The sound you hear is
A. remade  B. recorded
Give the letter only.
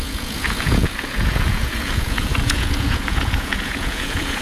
A